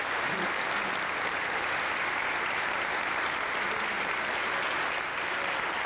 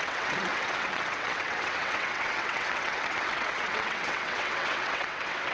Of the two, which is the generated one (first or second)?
second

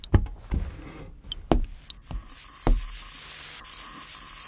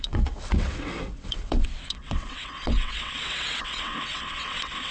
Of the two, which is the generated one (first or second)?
second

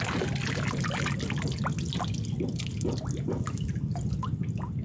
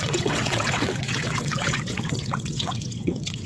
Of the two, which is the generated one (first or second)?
second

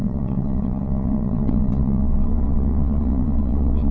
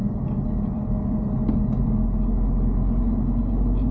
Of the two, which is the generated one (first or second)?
first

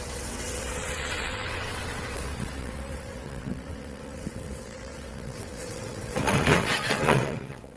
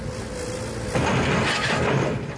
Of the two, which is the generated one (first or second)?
first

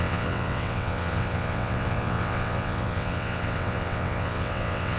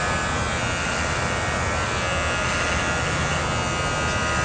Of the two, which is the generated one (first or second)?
first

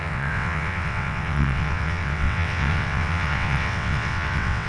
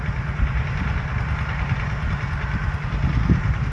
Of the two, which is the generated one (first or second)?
first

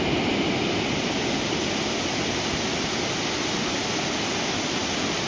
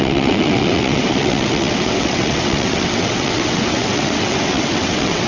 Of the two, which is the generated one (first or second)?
second